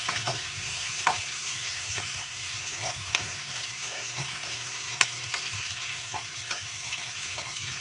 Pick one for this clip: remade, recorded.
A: remade